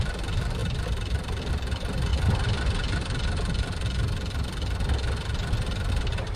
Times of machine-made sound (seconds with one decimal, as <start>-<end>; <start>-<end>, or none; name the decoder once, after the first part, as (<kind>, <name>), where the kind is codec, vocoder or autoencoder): 0.0-0.6 (vocoder, BigVGAN v2); 1.5-2.1; 5.9-6.4